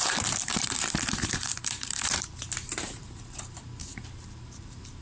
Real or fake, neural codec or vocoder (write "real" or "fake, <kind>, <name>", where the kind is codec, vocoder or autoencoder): fake, vocoder, BigVGAN v2